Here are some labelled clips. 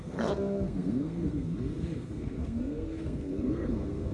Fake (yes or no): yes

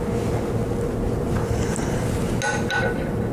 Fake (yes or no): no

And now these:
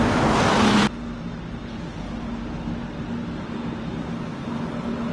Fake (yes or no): no